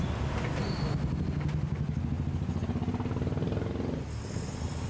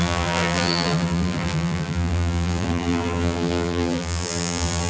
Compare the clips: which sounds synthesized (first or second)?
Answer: second